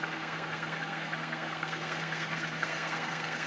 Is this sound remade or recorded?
remade